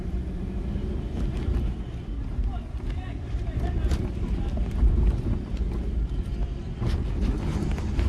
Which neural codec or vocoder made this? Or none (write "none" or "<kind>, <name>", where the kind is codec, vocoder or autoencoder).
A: none